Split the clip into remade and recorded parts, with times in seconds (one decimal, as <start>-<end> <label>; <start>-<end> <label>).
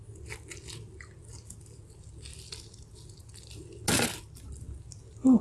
0.0-5.4 recorded